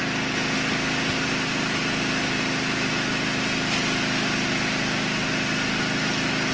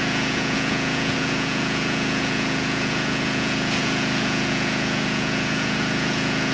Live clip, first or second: first